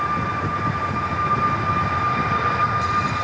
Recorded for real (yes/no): yes